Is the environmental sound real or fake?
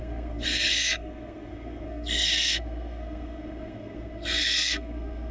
fake